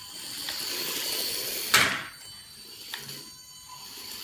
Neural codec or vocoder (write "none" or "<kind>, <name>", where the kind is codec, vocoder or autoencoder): none